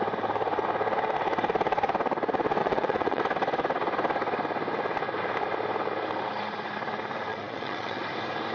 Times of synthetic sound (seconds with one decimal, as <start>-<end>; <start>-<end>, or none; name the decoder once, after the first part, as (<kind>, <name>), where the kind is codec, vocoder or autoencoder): 2.6-3.2 (vocoder, Vocos); 7.3-8.0